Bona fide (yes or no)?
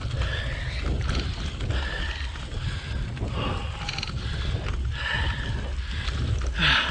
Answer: yes